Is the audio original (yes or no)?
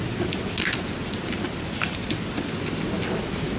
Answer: yes